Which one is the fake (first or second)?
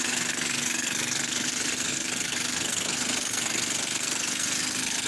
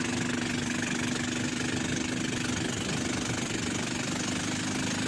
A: first